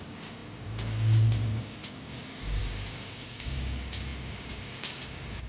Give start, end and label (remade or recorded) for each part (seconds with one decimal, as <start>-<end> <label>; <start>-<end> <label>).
0.0-5.5 remade